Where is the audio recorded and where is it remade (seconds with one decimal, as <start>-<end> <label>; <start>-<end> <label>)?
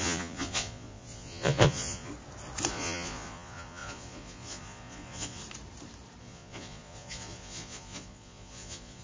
0.0-2.1 remade; 2.1-2.7 recorded; 2.7-5.4 remade; 5.4-6.2 recorded; 6.2-9.0 remade